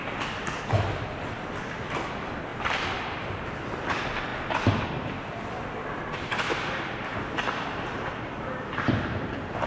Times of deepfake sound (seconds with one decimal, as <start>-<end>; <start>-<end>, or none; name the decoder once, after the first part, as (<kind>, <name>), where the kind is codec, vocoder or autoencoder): 0.0-4.3 (vocoder, BigVGAN v2); 4.9-9.7